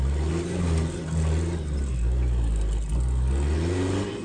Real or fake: real